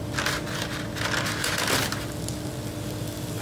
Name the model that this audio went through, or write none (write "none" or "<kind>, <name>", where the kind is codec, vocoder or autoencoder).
none